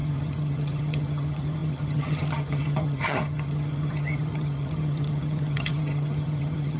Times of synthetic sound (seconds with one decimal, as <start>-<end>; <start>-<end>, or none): 0.0-6.8